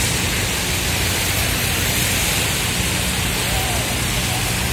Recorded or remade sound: recorded